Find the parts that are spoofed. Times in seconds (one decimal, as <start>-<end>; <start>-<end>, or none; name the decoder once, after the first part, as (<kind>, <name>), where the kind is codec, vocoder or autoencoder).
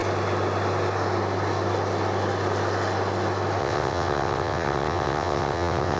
3.6-6.0 (vocoder, WaveNeXt)